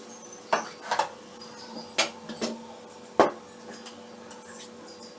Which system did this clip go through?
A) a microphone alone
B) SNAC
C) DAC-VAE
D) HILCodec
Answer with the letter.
A